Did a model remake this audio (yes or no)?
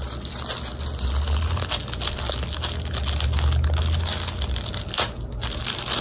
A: no